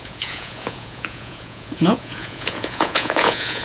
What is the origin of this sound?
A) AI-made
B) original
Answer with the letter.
A